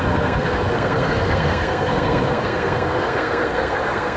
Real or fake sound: fake